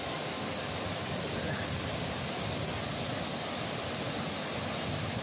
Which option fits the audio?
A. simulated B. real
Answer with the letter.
B